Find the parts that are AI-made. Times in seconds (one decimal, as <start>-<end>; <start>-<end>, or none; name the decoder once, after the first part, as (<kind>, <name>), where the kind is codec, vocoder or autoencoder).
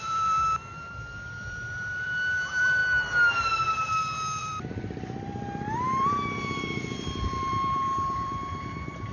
0.0-2.8 (vocoder, BigVGAN v2); 4.4-9.1